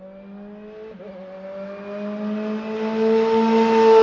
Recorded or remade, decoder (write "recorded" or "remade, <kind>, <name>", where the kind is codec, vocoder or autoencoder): recorded